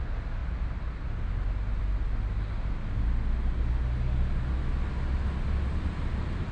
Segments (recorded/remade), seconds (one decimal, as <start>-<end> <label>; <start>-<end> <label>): 0.0-6.5 recorded